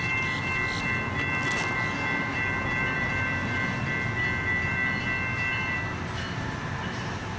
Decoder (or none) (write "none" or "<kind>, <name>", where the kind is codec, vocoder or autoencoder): none